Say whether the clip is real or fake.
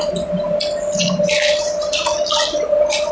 real